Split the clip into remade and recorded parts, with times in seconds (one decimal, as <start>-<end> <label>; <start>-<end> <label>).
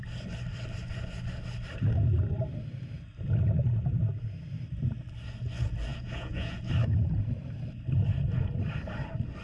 0.0-5.9 recorded; 5.9-6.7 remade; 6.7-9.4 recorded